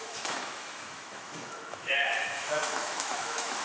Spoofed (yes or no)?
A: yes